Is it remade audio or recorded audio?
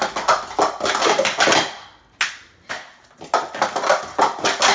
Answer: recorded